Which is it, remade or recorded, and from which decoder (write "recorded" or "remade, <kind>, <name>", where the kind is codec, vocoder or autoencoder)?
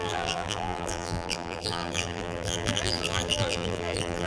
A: remade, vocoder, BigVGAN v2